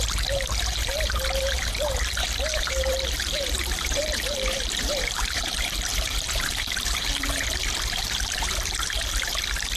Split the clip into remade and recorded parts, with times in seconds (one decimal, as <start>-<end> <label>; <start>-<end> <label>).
0.0-9.8 remade